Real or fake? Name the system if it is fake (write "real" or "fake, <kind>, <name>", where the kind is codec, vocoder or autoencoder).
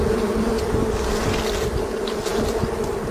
real